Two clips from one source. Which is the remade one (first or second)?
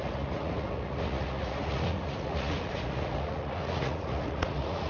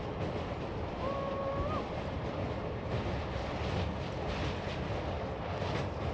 first